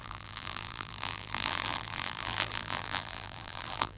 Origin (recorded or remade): remade